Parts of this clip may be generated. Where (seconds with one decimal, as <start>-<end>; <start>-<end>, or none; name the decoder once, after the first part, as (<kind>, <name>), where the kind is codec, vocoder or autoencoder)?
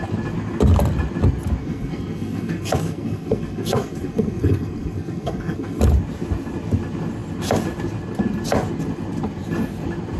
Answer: 1.6-5.8 (codec, SNAC)